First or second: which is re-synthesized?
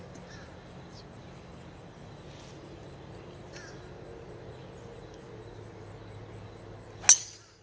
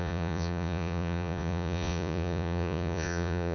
second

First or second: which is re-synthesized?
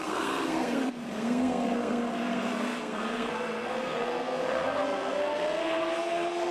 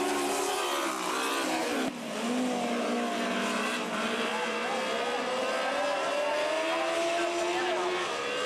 first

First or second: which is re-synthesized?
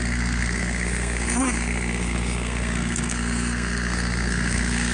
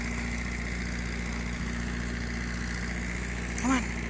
first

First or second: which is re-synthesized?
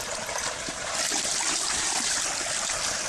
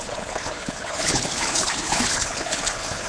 second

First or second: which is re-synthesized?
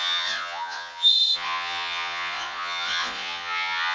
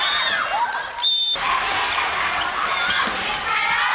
first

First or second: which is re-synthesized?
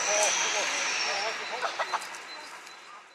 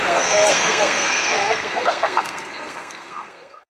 second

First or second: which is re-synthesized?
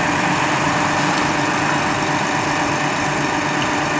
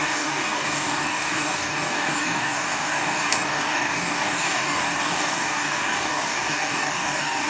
second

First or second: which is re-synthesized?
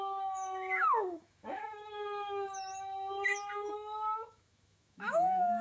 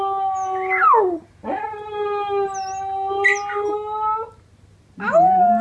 first